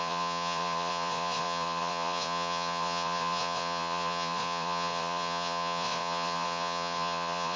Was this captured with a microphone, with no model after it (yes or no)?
no